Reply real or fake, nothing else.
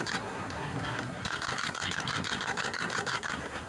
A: fake